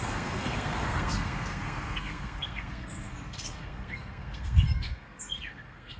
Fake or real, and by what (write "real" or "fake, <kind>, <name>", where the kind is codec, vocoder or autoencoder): fake, codec, SNAC